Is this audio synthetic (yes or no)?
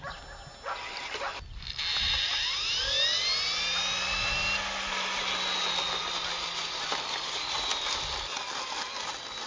no